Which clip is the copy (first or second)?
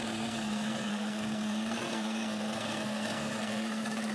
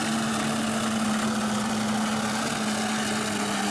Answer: first